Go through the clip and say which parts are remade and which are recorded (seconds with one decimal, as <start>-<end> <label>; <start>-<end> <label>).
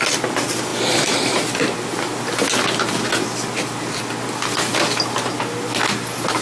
0.0-6.4 recorded